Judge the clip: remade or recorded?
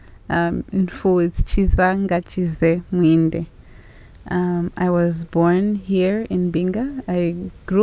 recorded